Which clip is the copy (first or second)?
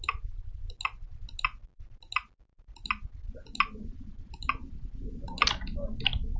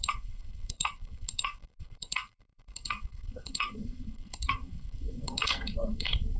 second